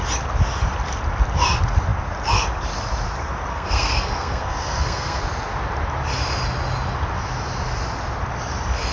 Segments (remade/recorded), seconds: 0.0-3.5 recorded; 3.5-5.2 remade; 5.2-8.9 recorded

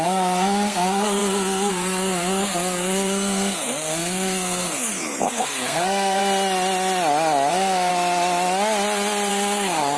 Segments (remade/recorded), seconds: 0.0-6.2 remade; 6.2-7.5 recorded; 7.5-7.9 remade; 7.9-9.3 recorded; 9.3-10.0 remade

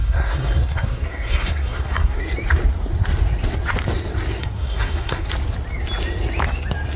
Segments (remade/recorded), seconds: 0.0-2.2 remade; 2.2-4.4 recorded; 4.4-5.3 remade; 5.3-7.0 recorded

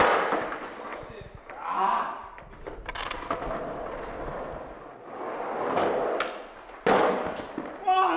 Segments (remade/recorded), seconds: 0.0-8.2 recorded

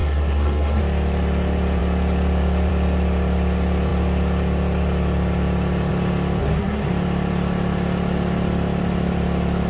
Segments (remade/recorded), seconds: 0.0-0.8 remade; 0.8-6.4 recorded; 6.4-6.9 remade; 6.9-9.7 recorded

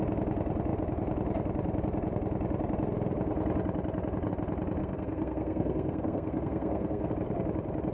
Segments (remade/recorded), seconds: 0.0-4.8 recorded; 4.8-7.1 remade; 7.1-7.9 recorded